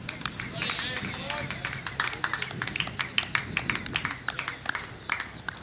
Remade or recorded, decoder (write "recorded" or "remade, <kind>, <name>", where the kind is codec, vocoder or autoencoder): recorded